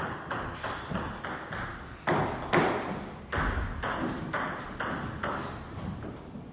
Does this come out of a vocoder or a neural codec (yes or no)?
no